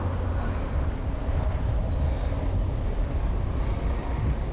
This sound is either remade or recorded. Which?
recorded